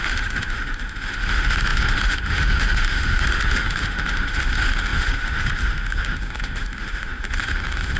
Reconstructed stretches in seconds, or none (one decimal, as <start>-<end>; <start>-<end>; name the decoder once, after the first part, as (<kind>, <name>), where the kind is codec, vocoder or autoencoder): 0.0-8.0 (autoencoder, DAC-VAE)